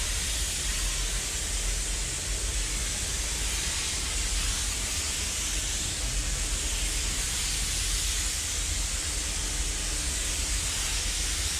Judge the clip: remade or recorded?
recorded